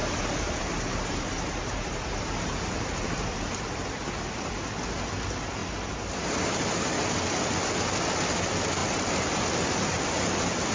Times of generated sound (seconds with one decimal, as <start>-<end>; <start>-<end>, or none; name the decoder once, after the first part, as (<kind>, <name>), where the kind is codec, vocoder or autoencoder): 0.0-4.5 (vocoder, BigVGAN v2)